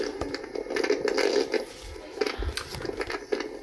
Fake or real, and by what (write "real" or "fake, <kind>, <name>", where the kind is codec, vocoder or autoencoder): real